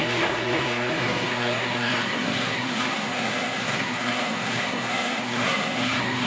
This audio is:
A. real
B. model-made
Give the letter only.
B